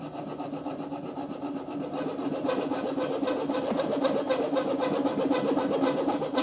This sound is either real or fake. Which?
real